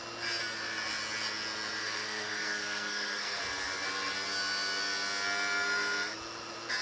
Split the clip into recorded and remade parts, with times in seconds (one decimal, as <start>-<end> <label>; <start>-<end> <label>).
0.0-1.8 recorded; 1.8-3.4 remade; 3.4-6.8 recorded